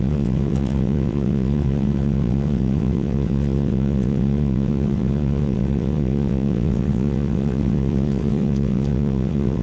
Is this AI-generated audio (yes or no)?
yes